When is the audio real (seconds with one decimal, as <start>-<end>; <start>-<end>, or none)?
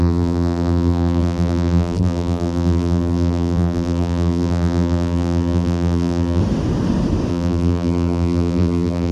6.4-7.3